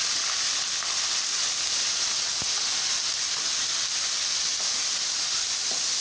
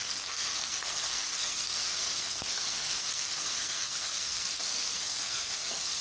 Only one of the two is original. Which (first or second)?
first